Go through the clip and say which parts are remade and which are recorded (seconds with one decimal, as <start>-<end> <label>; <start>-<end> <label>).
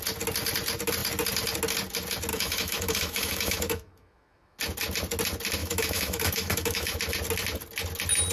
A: 0.0-2.3 recorded; 2.3-4.6 remade; 4.6-5.6 recorded; 5.6-7.0 remade; 7.0-8.3 recorded